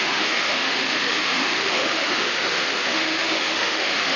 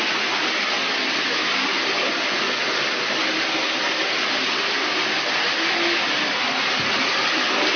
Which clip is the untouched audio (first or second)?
second